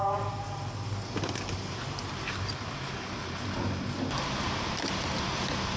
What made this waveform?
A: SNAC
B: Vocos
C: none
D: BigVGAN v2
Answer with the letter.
C